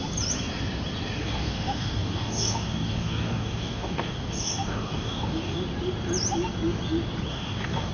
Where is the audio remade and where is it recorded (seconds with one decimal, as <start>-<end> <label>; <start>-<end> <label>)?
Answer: 0.0-1.2 recorded; 1.2-5.6 remade; 5.6-7.3 recorded; 7.3-7.9 remade